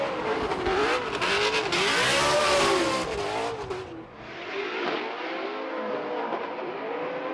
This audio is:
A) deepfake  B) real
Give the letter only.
B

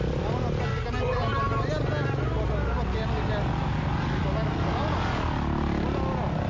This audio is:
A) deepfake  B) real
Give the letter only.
B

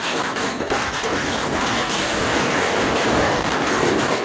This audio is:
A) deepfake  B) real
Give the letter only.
A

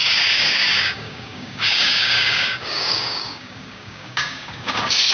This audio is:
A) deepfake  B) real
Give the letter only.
A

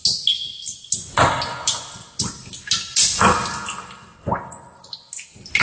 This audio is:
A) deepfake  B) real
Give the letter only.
B